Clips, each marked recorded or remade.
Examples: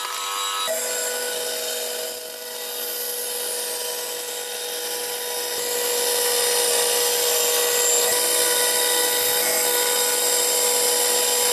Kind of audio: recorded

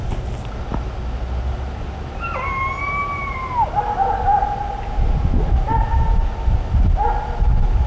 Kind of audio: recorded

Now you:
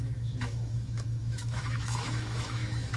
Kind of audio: remade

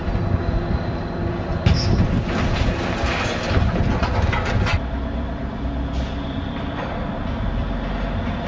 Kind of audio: recorded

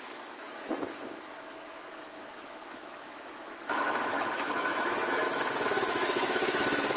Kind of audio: remade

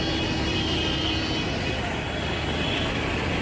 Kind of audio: recorded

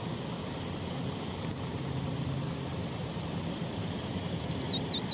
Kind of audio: recorded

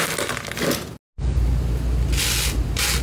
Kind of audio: recorded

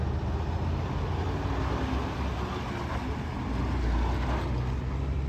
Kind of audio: recorded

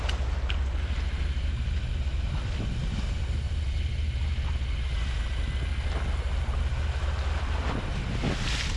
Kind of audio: recorded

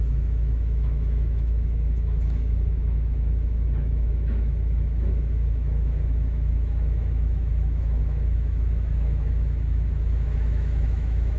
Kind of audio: remade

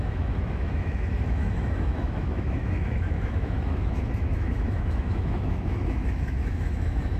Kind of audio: remade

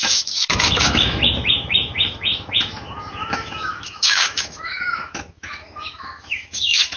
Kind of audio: remade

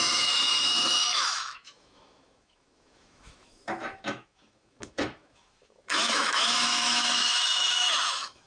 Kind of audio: remade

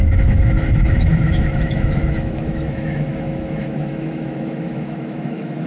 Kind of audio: remade